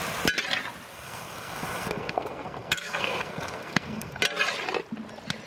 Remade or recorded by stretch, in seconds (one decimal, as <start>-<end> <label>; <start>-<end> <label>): 0.0-0.9 recorded; 0.9-4.2 remade; 4.2-5.5 recorded